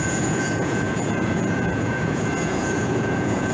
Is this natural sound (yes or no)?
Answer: no